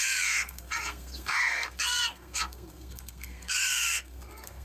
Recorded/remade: remade